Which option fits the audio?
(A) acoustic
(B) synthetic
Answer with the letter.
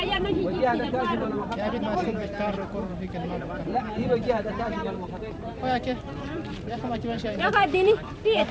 B